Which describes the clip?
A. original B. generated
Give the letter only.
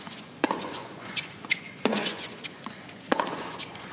B